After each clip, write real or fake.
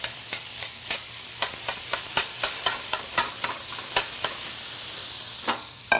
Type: fake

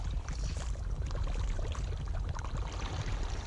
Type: real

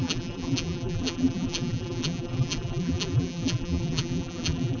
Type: fake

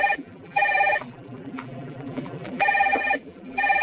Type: fake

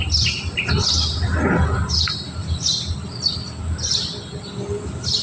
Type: real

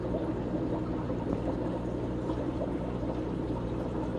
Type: fake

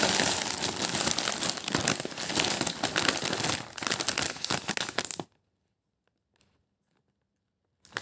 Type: real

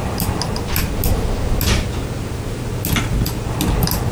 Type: real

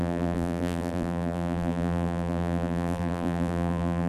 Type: fake